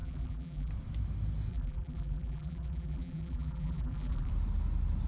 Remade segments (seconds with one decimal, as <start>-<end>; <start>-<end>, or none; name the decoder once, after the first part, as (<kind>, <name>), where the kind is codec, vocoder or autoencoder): 0.0-0.7 (vocoder, BigVGAN v2); 1.5-4.3